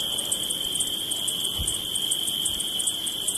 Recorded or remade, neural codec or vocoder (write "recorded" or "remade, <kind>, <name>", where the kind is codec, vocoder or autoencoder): recorded